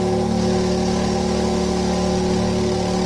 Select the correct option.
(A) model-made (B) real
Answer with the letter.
B